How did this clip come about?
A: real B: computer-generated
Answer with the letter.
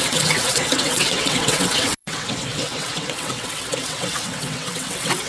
B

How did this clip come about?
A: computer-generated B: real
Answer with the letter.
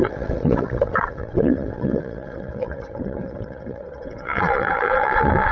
A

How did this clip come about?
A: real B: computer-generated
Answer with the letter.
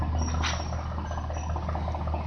A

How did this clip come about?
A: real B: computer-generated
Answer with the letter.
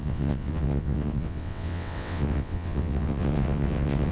B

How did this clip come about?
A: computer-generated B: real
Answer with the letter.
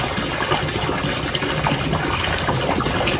B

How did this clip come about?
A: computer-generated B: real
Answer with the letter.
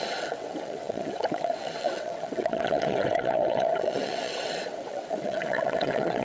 A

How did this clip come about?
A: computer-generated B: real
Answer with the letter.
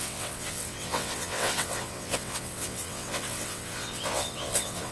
A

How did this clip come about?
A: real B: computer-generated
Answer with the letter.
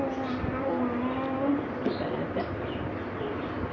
A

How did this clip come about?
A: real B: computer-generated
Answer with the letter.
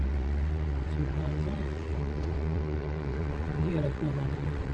B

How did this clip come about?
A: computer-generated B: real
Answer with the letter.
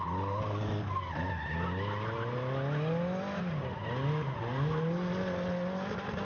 B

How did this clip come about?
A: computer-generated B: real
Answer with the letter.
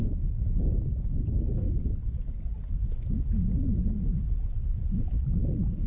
B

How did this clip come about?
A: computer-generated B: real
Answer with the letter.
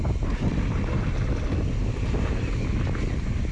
B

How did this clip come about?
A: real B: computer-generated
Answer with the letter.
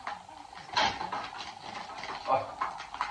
A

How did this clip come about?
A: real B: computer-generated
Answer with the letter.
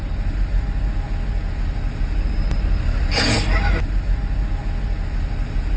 A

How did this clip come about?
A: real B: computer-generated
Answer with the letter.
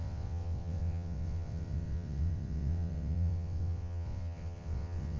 B